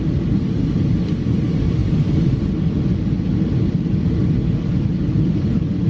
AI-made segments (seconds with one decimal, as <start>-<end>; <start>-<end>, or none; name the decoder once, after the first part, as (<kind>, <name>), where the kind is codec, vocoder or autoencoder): none